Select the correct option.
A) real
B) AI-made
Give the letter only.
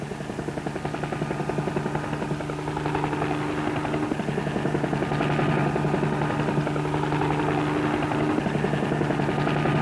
A